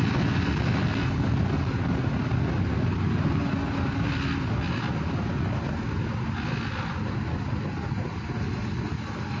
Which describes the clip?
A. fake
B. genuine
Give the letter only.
B